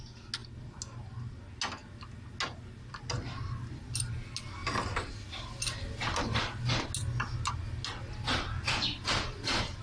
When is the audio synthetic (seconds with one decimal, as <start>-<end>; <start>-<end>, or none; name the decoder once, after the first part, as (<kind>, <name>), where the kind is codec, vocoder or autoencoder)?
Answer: none